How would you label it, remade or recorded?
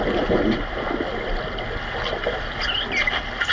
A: recorded